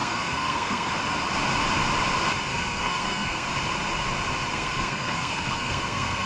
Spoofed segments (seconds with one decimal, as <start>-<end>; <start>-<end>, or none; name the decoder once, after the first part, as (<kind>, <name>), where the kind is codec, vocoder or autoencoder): 0.0-0.9 (codec, SNAC); 2.5-3.5; 4.5-6.3